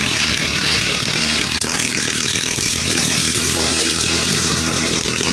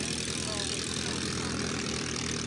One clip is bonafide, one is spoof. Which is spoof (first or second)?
first